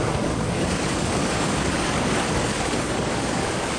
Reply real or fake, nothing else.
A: fake